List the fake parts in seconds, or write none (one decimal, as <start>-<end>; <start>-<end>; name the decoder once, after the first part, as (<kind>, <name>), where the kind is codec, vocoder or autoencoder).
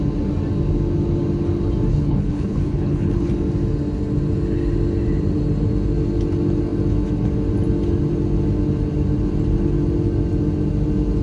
1.9-3.3 (codec, HILCodec)